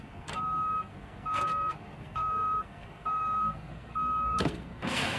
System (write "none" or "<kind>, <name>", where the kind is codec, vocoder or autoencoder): codec, SNAC